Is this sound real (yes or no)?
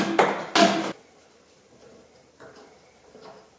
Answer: yes